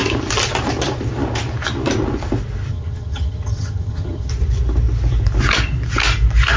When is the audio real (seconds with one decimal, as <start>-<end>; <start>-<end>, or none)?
0.0-2.7; 4.3-6.6